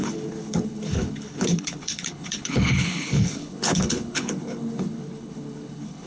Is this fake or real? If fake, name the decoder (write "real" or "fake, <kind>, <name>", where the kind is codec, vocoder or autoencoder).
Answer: fake, codec, HILCodec